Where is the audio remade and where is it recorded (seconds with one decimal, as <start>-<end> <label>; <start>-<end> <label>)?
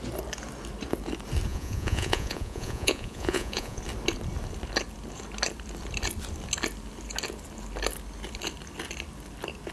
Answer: 0.0-1.5 recorded; 1.5-3.8 remade; 3.8-9.7 recorded